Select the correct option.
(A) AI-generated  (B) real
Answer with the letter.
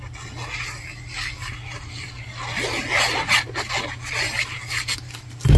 B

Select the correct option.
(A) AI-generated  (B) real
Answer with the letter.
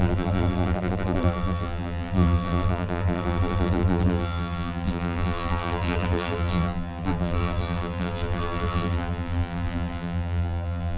A